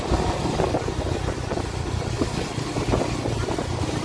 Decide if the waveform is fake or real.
real